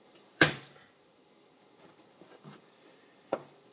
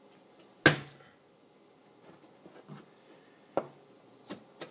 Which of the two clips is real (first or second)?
second